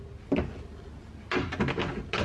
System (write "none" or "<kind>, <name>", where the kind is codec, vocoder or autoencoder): none